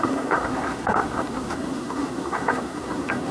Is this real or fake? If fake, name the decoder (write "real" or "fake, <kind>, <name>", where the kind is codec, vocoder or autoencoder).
fake, codec, SNAC